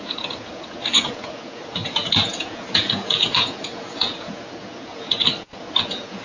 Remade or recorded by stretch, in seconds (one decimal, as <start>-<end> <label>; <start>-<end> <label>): 0.0-6.2 remade